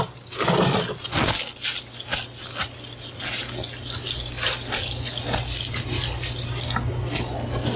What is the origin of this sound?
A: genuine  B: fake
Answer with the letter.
A